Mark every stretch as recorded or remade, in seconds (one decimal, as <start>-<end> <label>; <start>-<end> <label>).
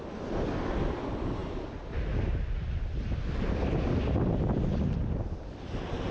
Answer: 0.0-6.1 recorded